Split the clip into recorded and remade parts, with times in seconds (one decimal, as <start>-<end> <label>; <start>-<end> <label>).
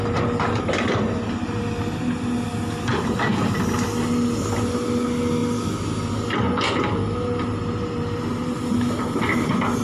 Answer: 0.0-9.8 recorded